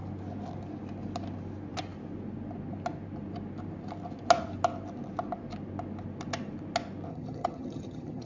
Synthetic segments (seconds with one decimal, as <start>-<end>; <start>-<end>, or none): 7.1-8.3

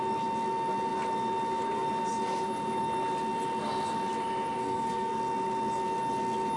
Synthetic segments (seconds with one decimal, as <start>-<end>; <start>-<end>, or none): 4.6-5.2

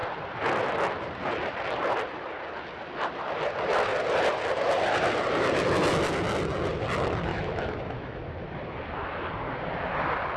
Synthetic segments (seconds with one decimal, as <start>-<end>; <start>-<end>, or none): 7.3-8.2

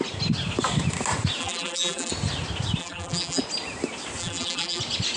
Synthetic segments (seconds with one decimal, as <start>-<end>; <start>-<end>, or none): 1.4-2.1; 2.8-3.4; 4.2-4.8

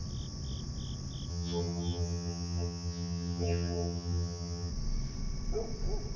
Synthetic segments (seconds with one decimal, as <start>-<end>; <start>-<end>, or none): 1.3-4.7

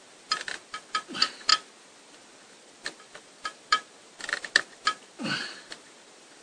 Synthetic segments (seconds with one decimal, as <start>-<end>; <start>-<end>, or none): 0.0-1.5; 2.5-6.4

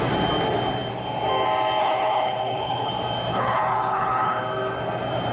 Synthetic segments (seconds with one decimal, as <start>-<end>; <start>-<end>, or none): 1.8-2.9; 3.3-4.4

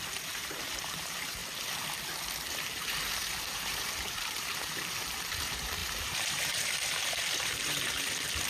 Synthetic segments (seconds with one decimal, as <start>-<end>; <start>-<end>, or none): 0.0-1.4; 2.6-8.5